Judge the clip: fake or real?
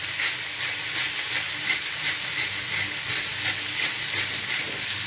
real